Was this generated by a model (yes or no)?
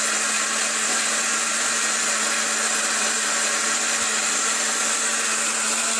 no